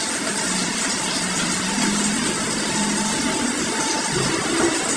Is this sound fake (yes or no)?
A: no